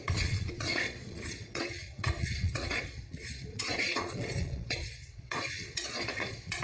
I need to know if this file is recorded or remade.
remade